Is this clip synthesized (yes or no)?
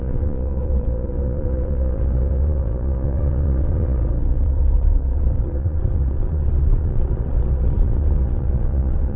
yes